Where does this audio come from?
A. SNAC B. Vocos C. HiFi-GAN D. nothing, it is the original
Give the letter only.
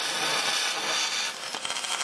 D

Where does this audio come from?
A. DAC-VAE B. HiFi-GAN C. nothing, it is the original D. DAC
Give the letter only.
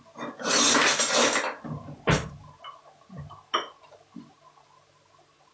C